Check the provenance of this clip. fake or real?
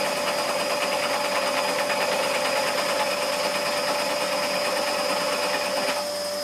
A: real